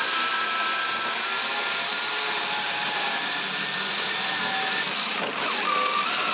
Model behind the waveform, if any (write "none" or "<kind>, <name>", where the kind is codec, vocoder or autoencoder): none